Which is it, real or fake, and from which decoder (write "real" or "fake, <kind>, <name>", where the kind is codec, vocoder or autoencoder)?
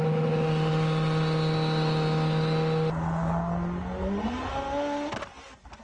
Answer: real